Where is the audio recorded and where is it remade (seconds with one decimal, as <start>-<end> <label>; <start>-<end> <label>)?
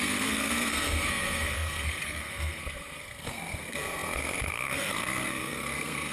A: 0.0-6.1 remade